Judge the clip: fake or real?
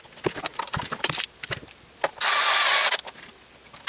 real